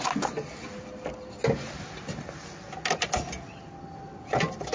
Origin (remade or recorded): recorded